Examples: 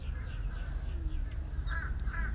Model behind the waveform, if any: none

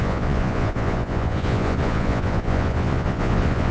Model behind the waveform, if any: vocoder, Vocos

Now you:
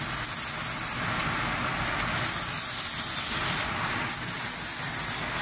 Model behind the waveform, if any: none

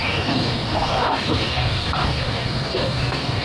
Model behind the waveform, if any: codec, DAC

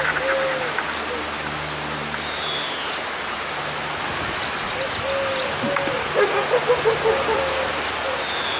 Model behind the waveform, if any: none